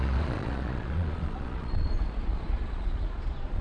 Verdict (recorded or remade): remade